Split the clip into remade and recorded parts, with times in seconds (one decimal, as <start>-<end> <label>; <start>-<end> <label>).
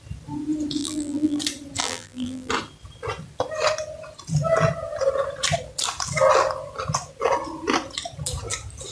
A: 0.0-0.8 recorded; 0.8-1.4 remade; 1.4-1.8 recorded; 1.8-2.5 remade; 2.5-8.9 recorded